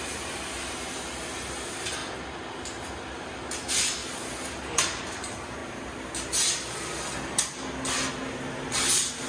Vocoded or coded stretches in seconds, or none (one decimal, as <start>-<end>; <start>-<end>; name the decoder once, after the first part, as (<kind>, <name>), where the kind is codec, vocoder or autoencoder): 0.0-2.0 (vocoder, BigVGAN v2); 3.2-4.0; 5.0-5.6